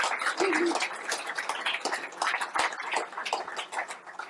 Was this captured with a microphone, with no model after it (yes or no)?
yes